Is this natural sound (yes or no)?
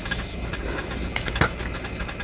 yes